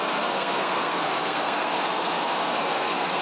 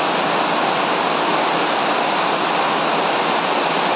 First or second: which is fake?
first